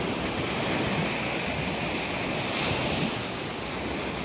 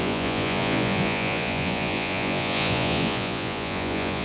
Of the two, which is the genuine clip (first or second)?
first